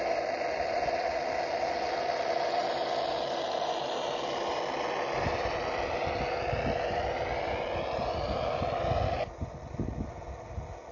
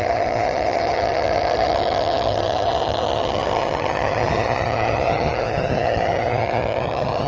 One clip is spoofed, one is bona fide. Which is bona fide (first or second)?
first